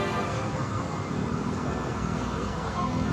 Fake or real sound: fake